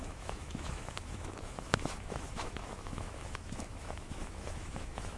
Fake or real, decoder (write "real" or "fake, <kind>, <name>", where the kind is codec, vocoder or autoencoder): fake, autoencoder, DAC-VAE